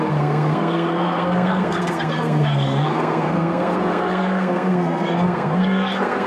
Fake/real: fake